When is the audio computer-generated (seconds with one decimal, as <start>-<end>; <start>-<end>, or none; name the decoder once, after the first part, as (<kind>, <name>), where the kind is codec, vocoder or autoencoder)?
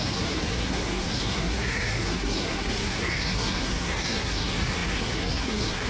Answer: 0.0-5.9 (codec, SNAC)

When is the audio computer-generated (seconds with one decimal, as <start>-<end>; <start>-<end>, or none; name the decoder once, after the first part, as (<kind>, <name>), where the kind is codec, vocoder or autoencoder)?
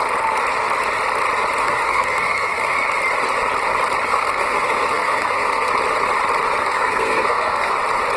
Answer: 1.6-2.8 (codec, SNAC); 4.1-5.7; 6.6-7.7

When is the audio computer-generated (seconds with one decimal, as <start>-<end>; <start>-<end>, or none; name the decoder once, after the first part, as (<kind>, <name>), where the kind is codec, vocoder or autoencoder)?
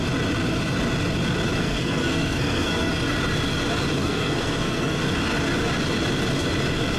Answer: 1.6-2.9 (codec, SNAC); 4.0-5.0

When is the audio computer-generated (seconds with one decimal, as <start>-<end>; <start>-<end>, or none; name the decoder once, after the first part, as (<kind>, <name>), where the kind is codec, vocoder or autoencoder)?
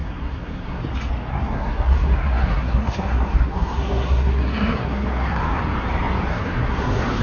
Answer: 0.0-0.8 (codec, SNAC); 1.3-5.6; 6.3-7.2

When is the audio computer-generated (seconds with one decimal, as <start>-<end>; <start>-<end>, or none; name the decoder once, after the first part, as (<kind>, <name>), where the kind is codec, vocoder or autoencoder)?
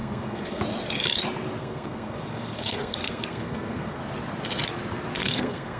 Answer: 0.0-0.6 (codec, SNAC); 1.6-4.0; 5.2-5.8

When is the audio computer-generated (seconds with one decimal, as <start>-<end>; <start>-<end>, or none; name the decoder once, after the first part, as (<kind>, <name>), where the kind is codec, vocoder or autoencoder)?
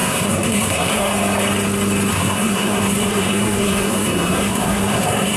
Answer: 0.0-1.1 (codec, SNAC); 2.1-5.4